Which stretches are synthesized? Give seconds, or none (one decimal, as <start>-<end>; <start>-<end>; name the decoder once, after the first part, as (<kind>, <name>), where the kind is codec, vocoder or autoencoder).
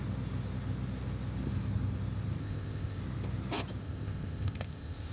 2.4-3.0 (codec, ZipCodec); 3.8-5.1